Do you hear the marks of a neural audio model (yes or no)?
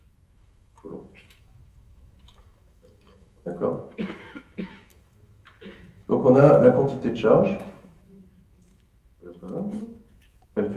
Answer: yes